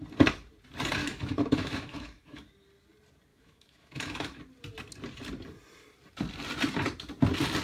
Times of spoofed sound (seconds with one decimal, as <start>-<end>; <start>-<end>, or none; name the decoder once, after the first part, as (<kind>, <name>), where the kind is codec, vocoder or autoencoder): 1.0-2.5 (autoencoder, DAC-VAE); 3.3-4.4